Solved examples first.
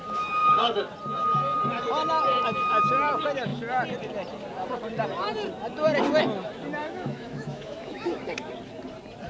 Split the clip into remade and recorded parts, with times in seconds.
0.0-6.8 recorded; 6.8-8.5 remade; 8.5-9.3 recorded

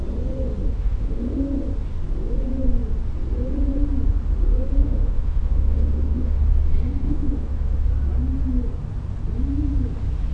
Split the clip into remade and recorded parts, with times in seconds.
0.0-0.6 recorded; 0.6-1.4 remade; 1.4-4.8 recorded; 4.8-6.4 remade; 6.4-7.0 recorded; 7.0-7.9 remade; 7.9-10.3 recorded

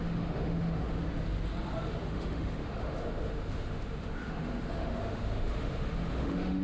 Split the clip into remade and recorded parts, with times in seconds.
0.0-1.0 remade; 1.0-1.9 recorded; 1.9-6.6 remade